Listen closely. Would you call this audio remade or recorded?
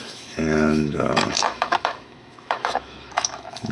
remade